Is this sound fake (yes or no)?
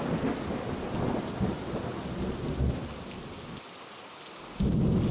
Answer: no